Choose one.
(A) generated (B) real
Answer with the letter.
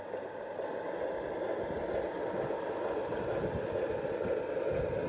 B